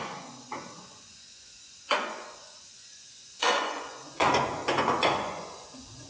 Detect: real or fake fake